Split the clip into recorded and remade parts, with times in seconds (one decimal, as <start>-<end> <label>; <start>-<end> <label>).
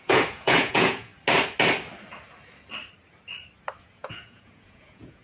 0.0-1.1 remade; 1.1-3.8 recorded; 3.8-5.2 remade